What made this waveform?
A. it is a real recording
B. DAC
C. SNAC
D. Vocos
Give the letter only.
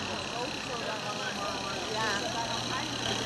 A